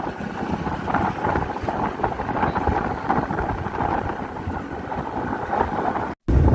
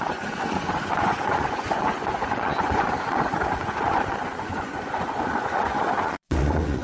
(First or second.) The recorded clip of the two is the first